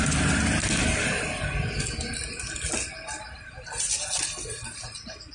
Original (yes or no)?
yes